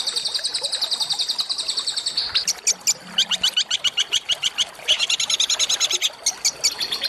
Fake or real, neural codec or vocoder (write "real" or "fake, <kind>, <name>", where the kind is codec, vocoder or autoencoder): real